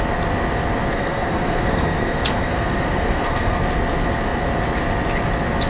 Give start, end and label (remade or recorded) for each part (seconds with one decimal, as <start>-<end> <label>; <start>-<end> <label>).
0.0-0.9 recorded; 0.9-3.6 remade; 3.6-5.7 recorded